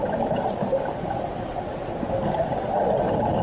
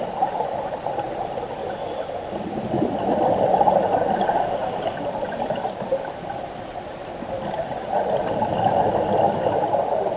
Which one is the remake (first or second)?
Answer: second